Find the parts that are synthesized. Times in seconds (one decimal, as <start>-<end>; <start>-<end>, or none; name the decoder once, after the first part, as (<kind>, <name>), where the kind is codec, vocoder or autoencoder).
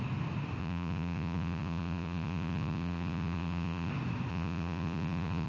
0.6-3.9 (vocoder, Vocos); 4.3-5.5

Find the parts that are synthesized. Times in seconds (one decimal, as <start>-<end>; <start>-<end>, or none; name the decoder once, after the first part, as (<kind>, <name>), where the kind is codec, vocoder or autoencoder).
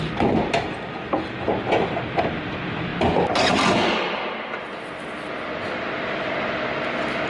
none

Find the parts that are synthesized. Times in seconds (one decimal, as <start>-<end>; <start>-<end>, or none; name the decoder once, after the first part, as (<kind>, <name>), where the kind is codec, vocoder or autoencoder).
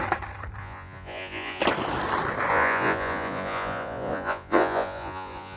0.6-1.6 (vocoder, Vocos); 2.5-5.6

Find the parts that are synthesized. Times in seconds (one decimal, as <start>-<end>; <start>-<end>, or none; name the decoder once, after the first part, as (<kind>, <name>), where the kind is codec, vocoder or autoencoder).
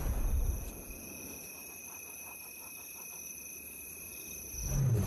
1.6-5.1 (vocoder, BigVGAN v2)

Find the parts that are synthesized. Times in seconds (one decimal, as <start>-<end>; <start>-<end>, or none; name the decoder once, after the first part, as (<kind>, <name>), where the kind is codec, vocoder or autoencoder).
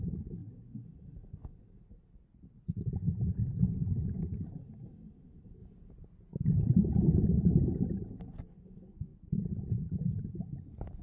5.6-6.7 (vocoder, Vocos); 9.1-10.3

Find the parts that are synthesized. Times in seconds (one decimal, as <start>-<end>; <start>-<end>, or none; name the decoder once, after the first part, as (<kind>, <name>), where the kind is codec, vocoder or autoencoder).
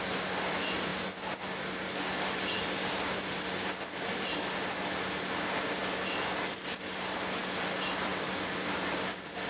none